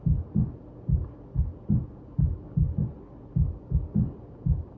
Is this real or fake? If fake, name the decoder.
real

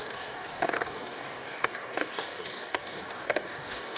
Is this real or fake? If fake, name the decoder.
fake, codec, DAC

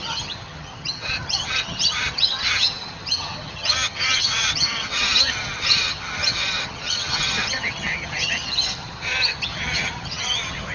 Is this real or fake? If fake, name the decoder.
fake, vocoder, HiFi-GAN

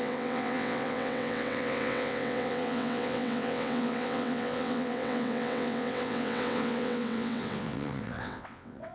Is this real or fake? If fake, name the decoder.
fake, vocoder, WaveNeXt